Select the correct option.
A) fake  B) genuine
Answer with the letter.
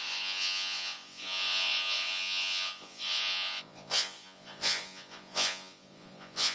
A